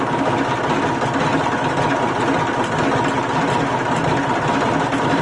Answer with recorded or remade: recorded